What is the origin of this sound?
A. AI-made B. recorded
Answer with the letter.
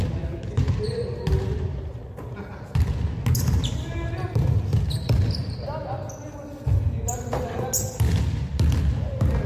B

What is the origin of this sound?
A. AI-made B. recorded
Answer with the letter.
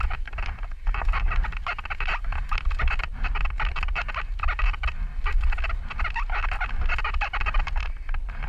B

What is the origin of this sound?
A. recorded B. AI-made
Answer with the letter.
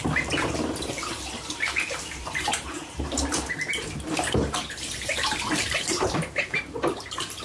B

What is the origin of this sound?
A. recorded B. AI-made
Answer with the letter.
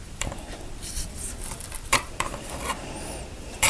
B